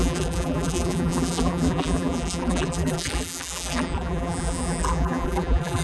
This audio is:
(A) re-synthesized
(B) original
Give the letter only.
A